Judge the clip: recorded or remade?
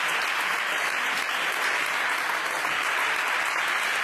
recorded